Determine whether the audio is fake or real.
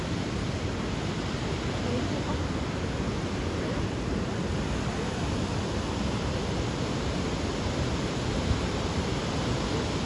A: real